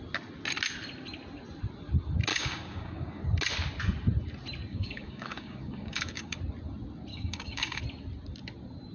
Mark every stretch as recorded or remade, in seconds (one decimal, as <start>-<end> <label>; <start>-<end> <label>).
0.0-2.3 recorded; 2.3-3.2 remade; 3.2-4.7 recorded; 4.7-6.4 remade; 6.4-7.1 recorded; 7.1-7.8 remade; 7.8-8.9 recorded